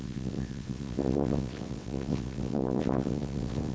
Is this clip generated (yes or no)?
yes